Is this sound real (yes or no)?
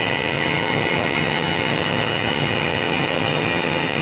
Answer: no